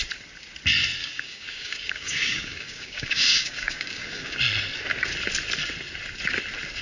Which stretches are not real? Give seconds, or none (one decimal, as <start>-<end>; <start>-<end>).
1.0-4.4